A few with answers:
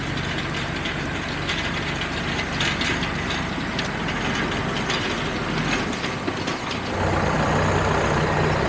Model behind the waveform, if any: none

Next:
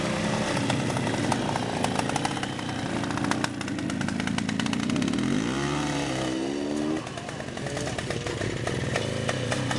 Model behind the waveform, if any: none